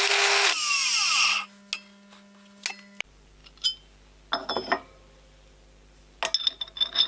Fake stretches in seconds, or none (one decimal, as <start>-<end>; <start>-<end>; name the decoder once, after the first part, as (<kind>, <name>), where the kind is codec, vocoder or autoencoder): none